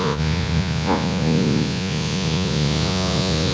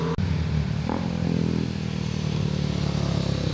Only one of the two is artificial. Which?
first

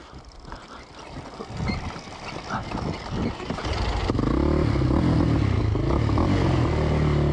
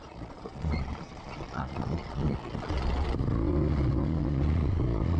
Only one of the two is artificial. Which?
second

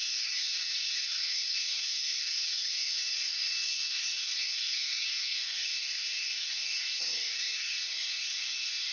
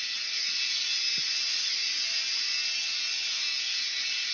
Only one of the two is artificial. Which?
first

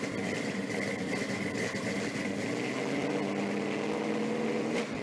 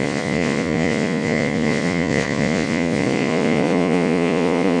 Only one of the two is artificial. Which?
second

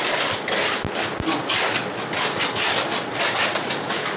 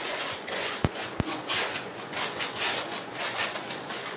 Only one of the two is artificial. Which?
second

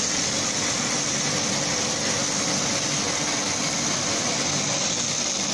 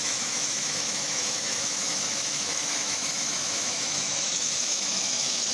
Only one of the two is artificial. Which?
second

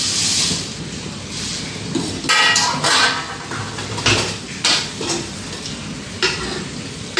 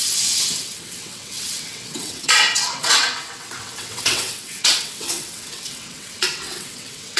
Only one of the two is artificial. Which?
second